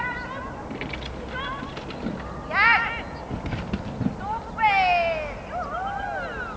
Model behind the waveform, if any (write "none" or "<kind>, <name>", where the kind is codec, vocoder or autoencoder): none